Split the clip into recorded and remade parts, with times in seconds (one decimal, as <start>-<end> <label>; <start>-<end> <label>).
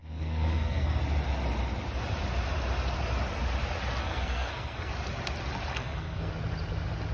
0.0-1.0 remade; 1.0-4.0 recorded; 4.0-4.9 remade; 4.9-5.7 recorded; 5.7-6.3 remade; 6.3-7.1 recorded